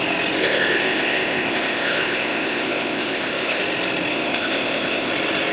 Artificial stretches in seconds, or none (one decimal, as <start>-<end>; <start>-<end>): 0.4-3.6; 4.1-5.1